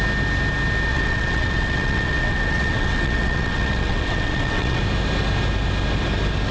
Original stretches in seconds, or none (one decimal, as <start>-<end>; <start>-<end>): 0.0-0.9; 4.8-6.5